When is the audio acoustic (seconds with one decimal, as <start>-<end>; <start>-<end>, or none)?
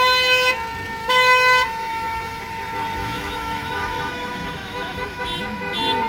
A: 0.0-1.0; 2.4-3.0; 5.2-6.1